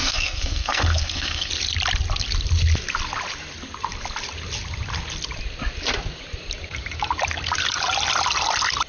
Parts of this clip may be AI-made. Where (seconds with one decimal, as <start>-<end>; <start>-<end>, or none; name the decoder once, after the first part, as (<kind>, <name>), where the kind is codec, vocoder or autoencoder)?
0.0-1.5 (codec, SNAC)